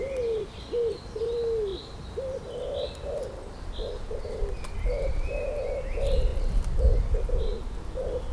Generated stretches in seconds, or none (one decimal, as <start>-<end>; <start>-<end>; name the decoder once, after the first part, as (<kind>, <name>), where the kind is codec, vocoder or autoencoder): none